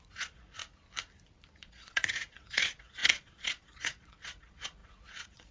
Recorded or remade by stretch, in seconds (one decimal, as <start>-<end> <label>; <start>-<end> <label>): 0.0-0.6 remade; 0.6-1.6 recorded; 1.6-5.5 remade